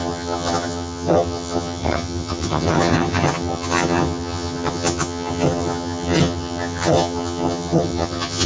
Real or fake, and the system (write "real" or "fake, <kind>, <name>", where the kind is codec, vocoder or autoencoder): fake, vocoder, HiFi-GAN